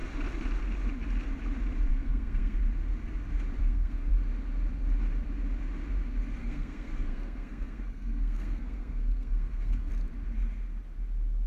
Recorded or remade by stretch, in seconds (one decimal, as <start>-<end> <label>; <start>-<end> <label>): 0.0-1.9 recorded; 1.9-2.6 remade; 2.6-3.6 recorded; 3.6-4.1 remade; 4.1-6.4 recorded; 6.4-9.9 remade; 9.9-11.5 recorded